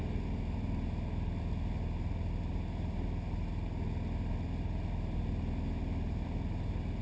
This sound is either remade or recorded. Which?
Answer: recorded